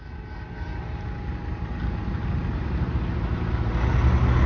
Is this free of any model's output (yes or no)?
yes